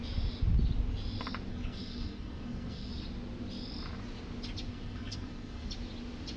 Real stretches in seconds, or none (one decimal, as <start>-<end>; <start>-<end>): 0.0-1.5; 2.9-4.7; 5.7-6.4